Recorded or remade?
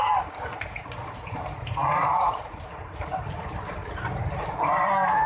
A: remade